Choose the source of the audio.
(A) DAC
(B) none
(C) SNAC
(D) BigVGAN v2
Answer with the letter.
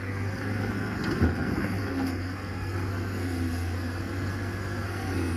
C